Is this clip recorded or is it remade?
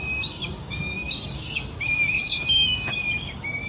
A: remade